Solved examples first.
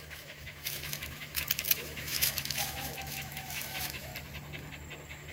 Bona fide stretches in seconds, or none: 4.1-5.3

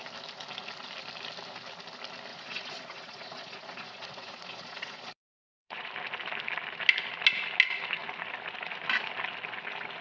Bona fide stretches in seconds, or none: 0.0-2.3; 5.9-10.0

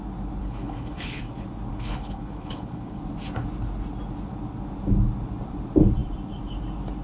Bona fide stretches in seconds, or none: 0.0-0.4; 1.2-1.7; 3.0-7.0

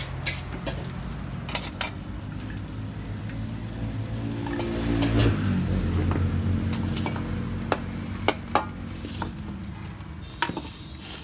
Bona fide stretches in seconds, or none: 0.0-11.2

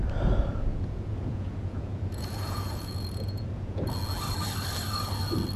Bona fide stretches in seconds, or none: 0.0-0.7; 3.9-5.6

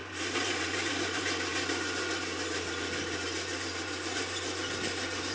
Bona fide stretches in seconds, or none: 1.5-3.5

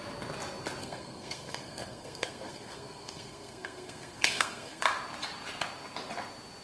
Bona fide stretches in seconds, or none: 0.0-0.8; 4.8-6.6